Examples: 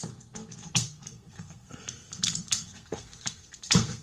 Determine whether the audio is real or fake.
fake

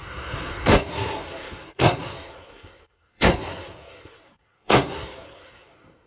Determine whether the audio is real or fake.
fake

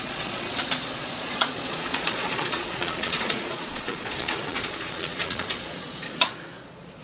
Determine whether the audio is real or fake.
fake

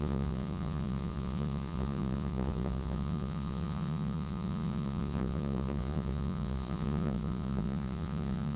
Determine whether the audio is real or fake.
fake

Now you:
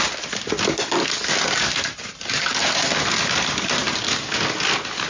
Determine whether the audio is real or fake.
real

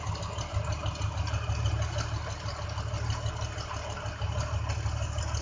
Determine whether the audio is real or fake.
real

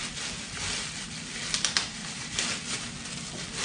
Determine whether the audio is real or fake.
real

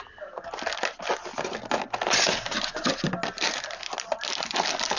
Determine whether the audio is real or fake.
real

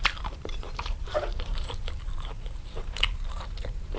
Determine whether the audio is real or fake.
fake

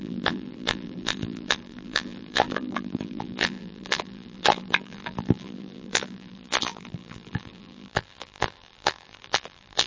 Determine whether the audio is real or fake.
fake